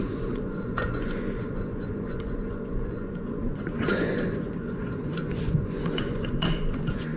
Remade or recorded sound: remade